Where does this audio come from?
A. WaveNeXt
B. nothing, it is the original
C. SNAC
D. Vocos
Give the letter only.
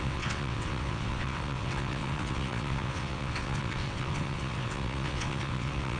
A